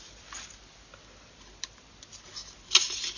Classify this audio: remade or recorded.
recorded